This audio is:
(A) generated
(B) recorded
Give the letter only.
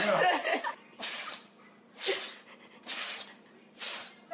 B